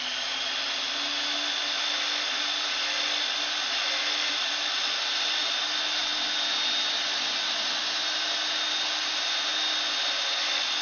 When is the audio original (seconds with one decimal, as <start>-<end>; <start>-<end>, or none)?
0.0-10.8